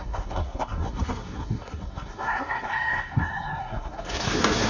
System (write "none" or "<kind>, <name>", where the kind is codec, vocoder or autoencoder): codec, SNAC